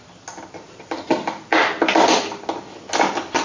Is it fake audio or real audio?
real